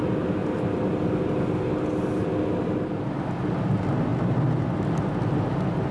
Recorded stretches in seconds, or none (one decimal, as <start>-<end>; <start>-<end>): 0.0-5.9